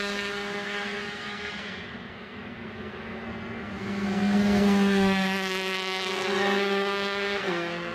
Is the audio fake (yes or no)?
yes